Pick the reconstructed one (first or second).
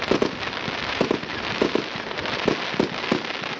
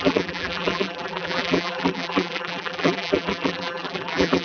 second